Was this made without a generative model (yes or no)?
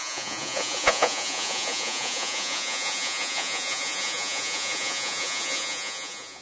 no